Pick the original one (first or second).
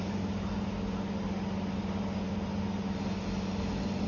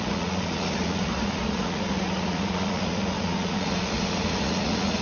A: first